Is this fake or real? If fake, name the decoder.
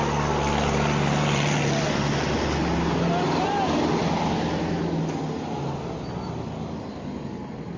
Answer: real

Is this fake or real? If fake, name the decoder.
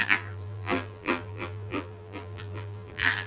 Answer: fake, vocoder, BigVGAN v2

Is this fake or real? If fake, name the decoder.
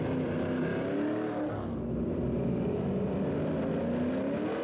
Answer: real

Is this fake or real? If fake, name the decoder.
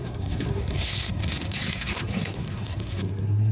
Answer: fake, codec, SNAC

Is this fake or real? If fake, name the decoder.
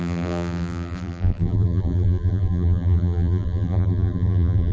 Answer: fake, vocoder, BigVGAN v2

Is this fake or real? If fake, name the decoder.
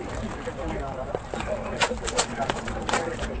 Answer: real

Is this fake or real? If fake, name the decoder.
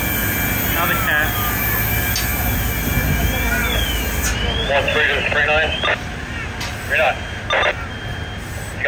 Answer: real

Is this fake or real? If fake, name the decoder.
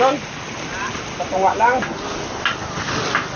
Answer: real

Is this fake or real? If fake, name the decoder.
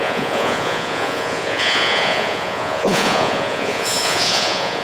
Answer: fake, vocoder, Vocos